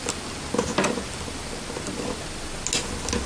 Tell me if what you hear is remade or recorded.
recorded